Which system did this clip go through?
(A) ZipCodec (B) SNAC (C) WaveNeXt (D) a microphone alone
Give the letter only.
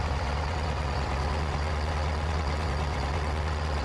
C